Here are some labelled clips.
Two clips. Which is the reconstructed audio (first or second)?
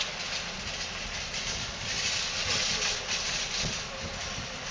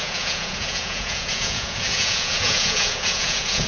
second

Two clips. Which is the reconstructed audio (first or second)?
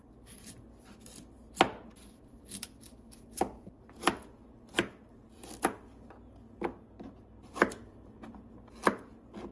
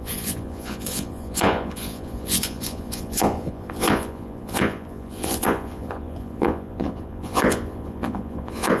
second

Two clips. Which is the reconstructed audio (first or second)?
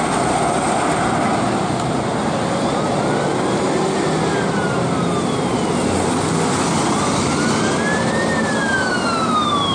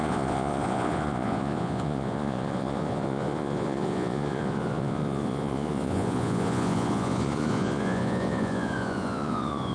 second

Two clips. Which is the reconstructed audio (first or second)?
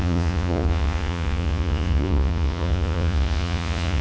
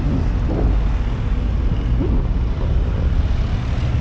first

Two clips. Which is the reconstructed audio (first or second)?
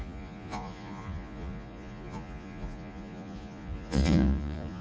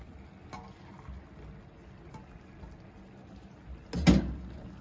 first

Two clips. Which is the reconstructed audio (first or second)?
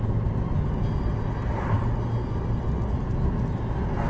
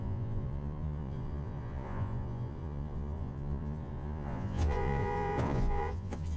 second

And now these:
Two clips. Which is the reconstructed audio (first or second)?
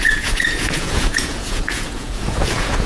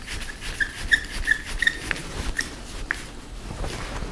first